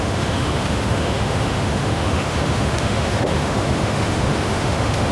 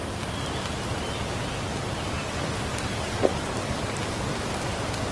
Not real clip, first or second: first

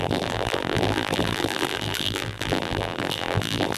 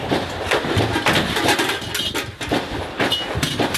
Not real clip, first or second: first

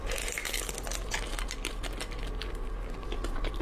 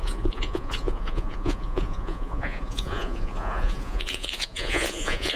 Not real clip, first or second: second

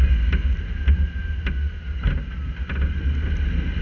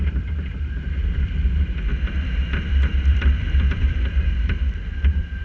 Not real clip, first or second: second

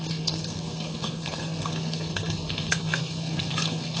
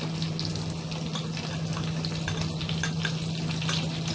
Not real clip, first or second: first